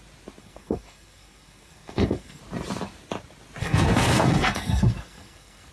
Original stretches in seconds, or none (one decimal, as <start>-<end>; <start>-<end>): 0.0-0.4; 2.4-3.6